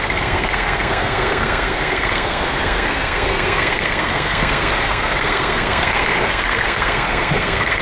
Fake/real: fake